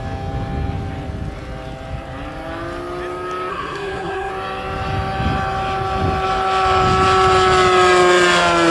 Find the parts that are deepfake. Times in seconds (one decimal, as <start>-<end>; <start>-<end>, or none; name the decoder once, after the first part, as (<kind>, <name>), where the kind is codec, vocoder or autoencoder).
3.5-4.3 (codec, SNAC)